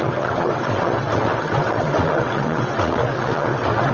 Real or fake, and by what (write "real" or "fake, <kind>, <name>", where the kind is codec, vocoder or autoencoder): fake, vocoder, WaveNeXt